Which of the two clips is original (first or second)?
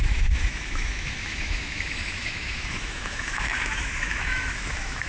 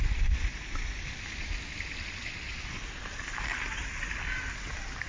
second